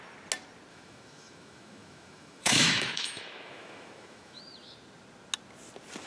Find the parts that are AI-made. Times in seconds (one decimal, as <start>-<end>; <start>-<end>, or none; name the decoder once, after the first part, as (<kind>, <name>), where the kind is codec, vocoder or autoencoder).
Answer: 0.7-4.4 (autoencoder, DAC-VAE)